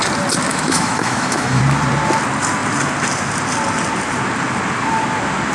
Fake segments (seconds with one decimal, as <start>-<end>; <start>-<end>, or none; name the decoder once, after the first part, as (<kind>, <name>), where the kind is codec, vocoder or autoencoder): 0.5-1.6 (autoencoder, DAC-VAE)